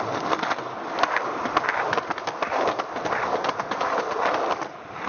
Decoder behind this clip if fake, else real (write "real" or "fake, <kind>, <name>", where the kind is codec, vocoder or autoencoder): real